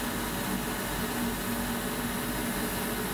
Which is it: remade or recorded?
recorded